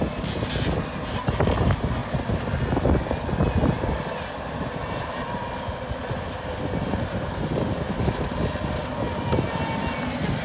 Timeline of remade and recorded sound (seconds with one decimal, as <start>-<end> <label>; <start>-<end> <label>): 0.0-10.4 recorded